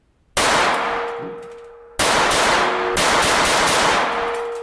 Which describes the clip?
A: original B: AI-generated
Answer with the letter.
A